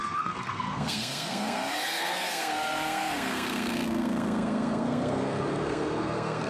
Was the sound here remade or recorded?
remade